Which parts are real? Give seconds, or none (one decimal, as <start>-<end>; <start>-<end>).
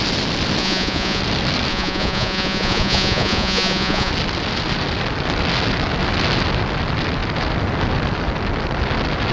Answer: 0.0-0.6; 1.2-1.7; 4.1-9.3